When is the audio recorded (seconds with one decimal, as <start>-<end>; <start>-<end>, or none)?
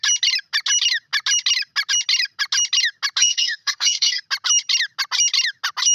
0.0-3.2; 4.2-5.9